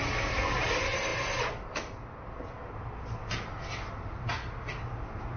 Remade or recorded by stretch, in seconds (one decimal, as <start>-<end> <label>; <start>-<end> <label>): 0.0-1.1 recorded; 1.1-2.3 remade; 2.3-5.4 recorded